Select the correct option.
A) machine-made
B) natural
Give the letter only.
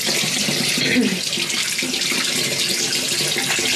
B